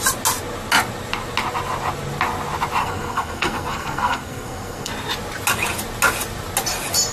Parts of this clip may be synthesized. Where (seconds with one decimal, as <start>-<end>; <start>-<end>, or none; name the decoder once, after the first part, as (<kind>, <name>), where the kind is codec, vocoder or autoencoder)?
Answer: 2.8-4.9 (codec, SNAC)